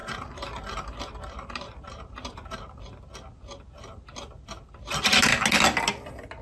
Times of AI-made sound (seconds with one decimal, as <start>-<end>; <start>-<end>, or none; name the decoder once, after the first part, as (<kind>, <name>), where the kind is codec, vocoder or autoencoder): 0.0-2.8 (vocoder, BigVGAN v2)